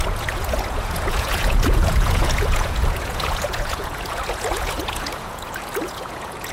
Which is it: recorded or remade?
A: remade